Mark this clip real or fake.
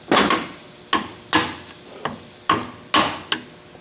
real